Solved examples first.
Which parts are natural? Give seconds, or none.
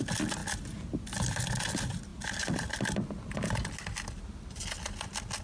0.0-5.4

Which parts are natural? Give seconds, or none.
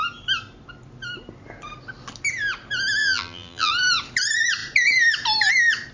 0.0-3.0; 3.7-5.9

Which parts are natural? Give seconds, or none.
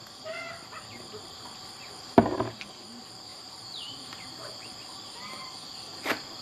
0.0-3.3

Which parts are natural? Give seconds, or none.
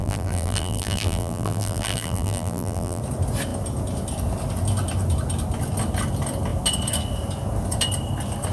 3.0-8.5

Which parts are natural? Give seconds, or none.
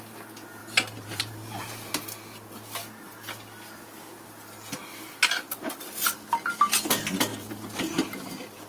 0.0-0.6; 1.9-7.3; 7.8-8.7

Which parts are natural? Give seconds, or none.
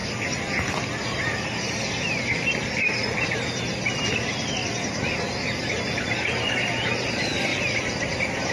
0.0-3.7; 5.2-7.5; 8.1-8.5